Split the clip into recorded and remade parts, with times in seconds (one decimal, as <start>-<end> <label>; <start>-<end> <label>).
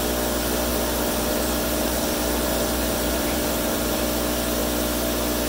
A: 0.0-0.7 recorded; 0.7-4.0 remade; 4.0-5.5 recorded